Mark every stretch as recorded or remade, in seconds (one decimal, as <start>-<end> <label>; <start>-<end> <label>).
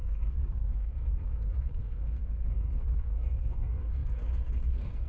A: 0.0-5.1 remade